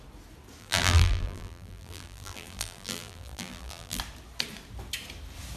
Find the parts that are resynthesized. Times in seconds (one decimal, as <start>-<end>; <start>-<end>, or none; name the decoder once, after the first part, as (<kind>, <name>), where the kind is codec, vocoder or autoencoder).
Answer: 0.6-4.0 (vocoder, BigVGAN v2)